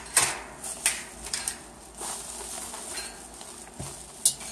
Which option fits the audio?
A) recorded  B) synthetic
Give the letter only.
A